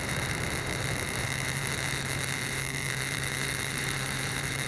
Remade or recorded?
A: remade